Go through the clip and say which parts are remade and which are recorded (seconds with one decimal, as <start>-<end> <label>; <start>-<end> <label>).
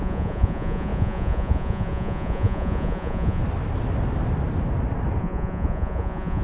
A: 0.0-3.4 remade; 3.4-5.2 recorded; 5.2-6.4 remade